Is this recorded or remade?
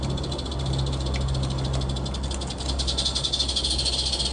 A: recorded